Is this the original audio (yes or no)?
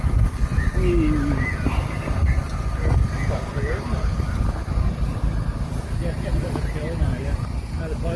yes